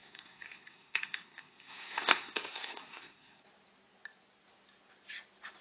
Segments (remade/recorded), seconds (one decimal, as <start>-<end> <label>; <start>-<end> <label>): 0.0-3.4 remade; 3.4-5.6 recorded